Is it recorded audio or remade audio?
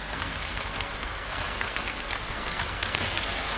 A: remade